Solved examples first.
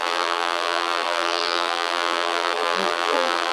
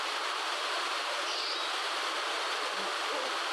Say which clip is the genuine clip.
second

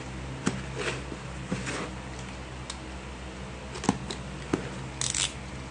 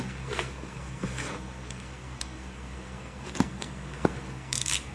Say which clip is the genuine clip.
first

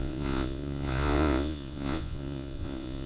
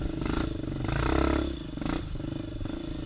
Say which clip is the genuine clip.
second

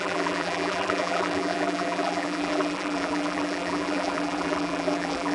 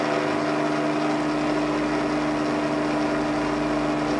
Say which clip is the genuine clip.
second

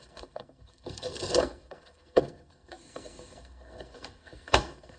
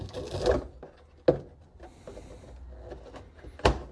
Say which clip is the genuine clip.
second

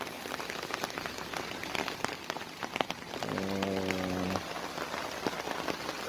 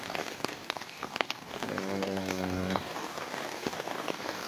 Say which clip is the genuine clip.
first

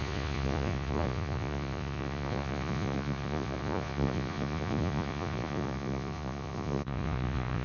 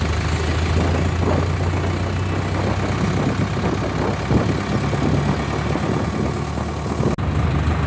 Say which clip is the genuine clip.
second